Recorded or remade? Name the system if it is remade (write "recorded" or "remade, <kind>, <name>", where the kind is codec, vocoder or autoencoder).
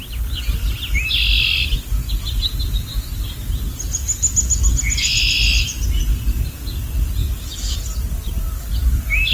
recorded